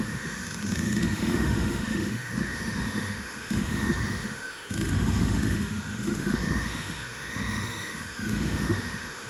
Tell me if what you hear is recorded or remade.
remade